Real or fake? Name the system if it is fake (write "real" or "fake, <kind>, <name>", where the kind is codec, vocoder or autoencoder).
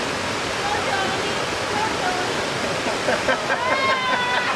real